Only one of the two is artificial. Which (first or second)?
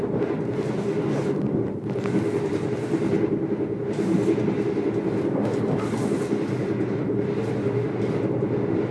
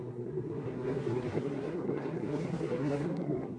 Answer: second